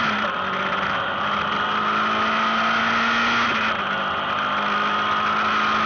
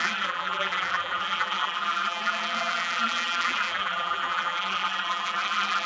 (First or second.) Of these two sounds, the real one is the first